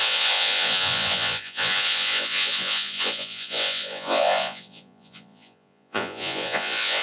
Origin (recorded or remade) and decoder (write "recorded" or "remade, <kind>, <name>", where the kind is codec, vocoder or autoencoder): remade, vocoder, Vocos